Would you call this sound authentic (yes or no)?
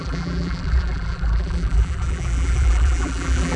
no